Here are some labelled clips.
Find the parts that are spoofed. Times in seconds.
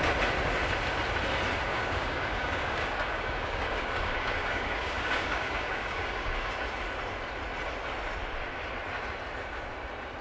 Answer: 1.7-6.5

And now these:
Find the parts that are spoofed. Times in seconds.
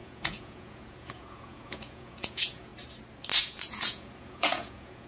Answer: 0.0-2.7; 3.4-5.1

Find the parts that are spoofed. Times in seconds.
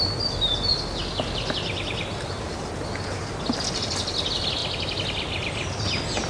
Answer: none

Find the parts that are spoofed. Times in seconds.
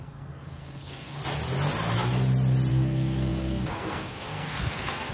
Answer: 0.0-1.2; 2.7-5.1